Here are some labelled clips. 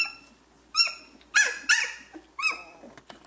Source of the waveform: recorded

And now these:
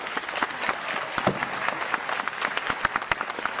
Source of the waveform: recorded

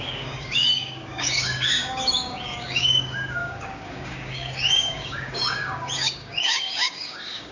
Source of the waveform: remade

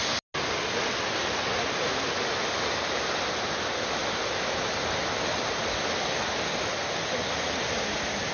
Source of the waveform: recorded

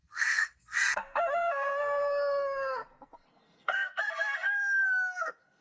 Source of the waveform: remade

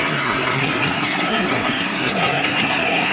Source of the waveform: remade